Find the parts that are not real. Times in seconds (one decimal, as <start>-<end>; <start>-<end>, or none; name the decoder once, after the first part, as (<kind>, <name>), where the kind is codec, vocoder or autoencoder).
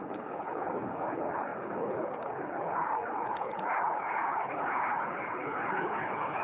0.0-6.4 (codec, HILCodec)